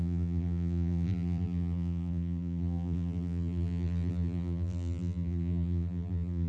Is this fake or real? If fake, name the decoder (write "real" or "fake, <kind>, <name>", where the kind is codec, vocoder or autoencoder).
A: fake, vocoder, BigVGAN v2